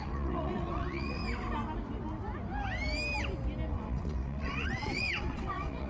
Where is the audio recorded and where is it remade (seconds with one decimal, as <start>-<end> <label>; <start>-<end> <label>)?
0.0-1.2 remade; 1.2-3.7 recorded; 3.7-5.9 remade